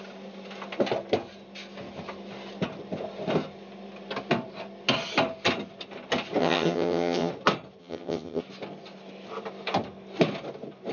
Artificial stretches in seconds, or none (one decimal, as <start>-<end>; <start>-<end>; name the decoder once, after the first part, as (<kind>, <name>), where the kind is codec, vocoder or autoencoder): 6.4-7.3 (vocoder, HiFi-GAN); 7.8-8.4